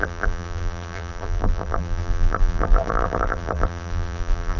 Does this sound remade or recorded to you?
remade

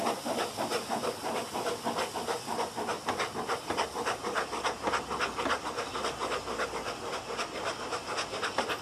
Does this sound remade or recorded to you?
recorded